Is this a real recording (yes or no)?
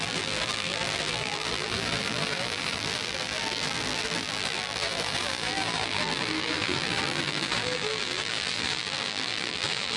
no